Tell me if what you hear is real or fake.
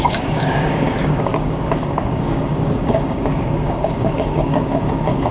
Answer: fake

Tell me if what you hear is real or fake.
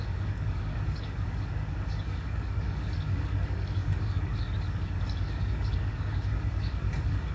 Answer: fake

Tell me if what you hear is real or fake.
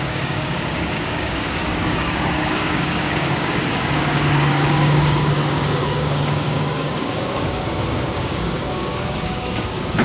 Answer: fake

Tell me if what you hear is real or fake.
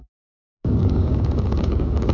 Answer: fake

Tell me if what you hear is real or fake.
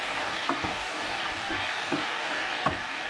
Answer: fake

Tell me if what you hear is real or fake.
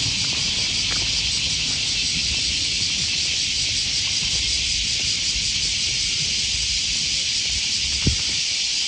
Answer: real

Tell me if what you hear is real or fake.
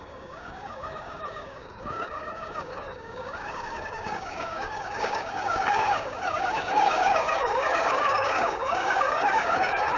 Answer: fake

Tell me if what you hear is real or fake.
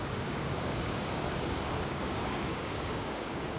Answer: fake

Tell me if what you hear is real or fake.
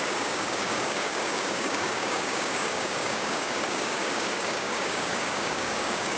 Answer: fake